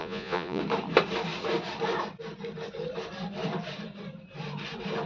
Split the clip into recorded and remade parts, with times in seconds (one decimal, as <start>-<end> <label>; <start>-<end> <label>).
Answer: 0.0-0.6 remade; 0.6-5.1 recorded